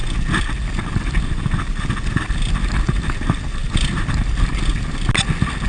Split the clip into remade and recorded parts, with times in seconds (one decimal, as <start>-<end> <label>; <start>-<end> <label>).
0.0-5.7 recorded